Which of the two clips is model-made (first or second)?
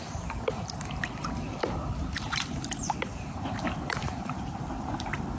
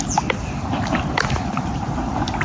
first